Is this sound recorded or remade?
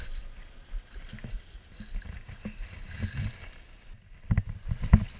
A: recorded